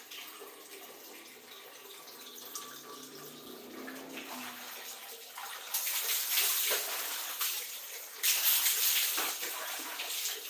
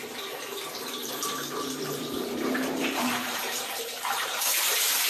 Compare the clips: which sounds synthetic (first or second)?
second